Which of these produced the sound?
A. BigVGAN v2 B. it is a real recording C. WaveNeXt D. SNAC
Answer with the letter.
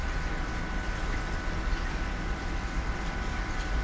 B